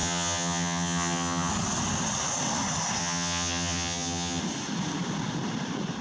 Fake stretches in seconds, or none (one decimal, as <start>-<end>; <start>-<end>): 0.0-1.5; 3.0-4.4